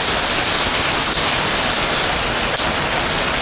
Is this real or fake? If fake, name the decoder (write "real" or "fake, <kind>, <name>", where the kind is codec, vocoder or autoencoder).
real